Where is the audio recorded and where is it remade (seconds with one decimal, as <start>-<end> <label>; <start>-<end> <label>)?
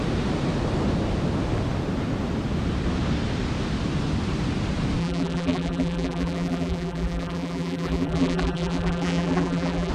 0.0-5.0 recorded; 5.0-9.9 remade